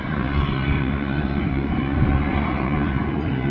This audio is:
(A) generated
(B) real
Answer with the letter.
A